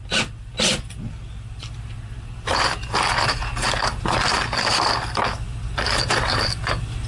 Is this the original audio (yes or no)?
yes